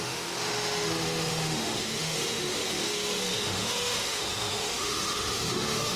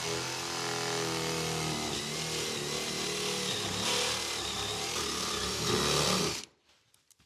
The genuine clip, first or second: second